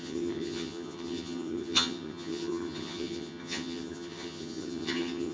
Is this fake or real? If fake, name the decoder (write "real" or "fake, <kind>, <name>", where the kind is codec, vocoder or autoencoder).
fake, vocoder, HiFi-GAN